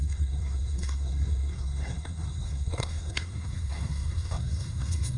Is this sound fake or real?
fake